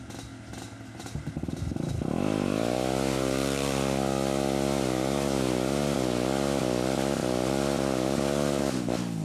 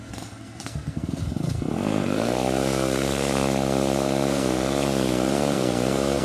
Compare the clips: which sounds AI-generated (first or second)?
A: second